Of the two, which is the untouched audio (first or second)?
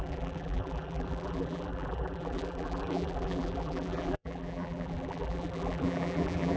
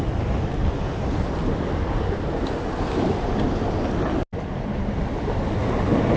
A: second